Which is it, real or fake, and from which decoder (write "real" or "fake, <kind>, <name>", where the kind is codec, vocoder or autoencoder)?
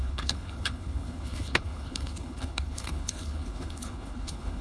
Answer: fake, codec, HILCodec